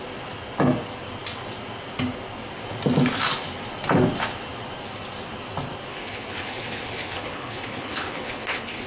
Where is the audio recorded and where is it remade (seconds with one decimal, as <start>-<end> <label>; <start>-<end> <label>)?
0.0-5.9 recorded; 5.9-8.9 remade